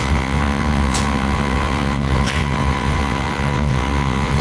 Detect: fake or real fake